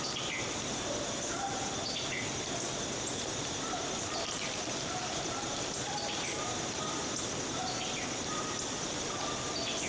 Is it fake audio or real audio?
real